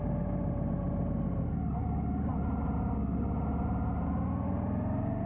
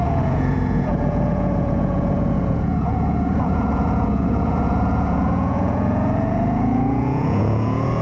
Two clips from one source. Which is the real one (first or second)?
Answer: first